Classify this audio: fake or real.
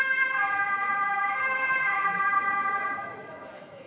fake